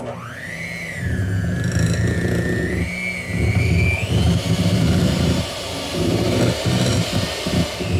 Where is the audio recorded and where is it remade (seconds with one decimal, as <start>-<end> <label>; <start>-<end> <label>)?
0.0-8.0 recorded